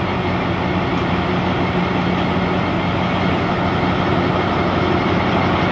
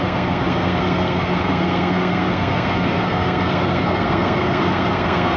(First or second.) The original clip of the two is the first